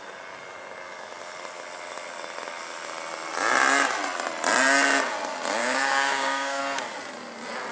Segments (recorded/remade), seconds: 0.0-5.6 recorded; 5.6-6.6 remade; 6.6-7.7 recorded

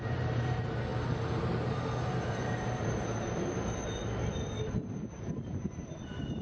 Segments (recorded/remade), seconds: 0.0-4.0 remade; 4.0-4.9 recorded; 4.9-6.4 remade

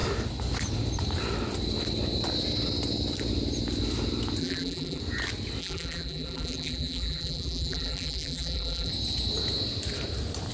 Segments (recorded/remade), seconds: 0.0-4.4 recorded; 4.4-5.0 remade; 5.0-5.6 recorded; 5.6-8.9 remade; 8.9-10.5 recorded

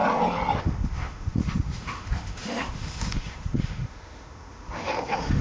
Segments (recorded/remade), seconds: 0.0-0.6 recorded; 0.6-5.4 remade

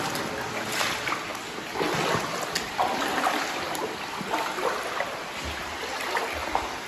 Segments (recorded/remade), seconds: 0.0-6.9 recorded